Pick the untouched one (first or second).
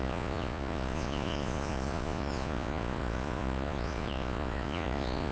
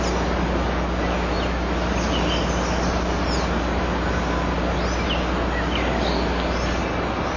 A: second